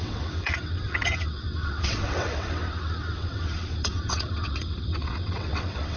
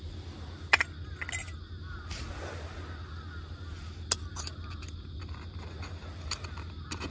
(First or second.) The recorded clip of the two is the second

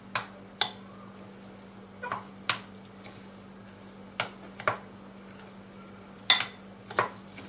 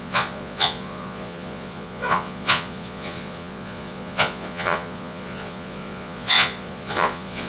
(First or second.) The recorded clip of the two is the first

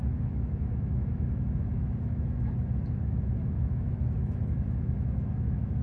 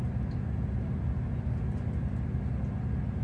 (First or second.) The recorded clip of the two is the second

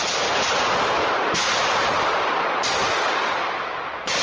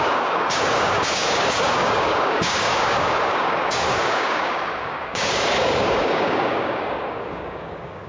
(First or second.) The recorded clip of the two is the first